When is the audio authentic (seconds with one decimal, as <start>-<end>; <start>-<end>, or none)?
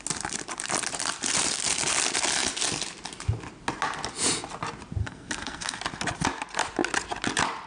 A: 0.0-5.0; 5.8-7.7